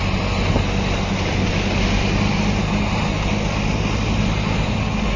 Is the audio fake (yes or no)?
no